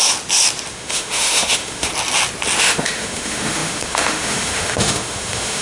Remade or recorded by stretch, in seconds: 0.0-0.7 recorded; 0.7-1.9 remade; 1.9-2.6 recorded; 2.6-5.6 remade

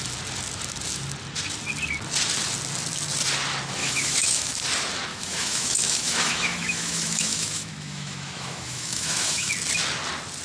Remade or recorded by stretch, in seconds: 0.0-3.8 recorded; 3.8-4.5 remade; 4.5-5.1 recorded; 5.1-9.5 remade; 9.5-10.4 recorded

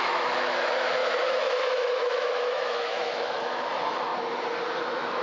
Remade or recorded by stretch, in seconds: 0.0-4.1 remade; 4.1-4.8 recorded; 4.8-5.2 remade